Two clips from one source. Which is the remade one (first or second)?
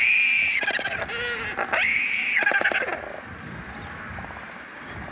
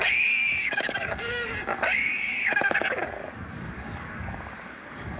second